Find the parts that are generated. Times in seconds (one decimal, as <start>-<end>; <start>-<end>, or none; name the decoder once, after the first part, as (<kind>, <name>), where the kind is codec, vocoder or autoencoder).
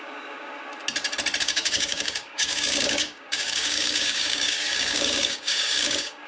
0.0-0.7 (codec, DAC); 1.4-6.3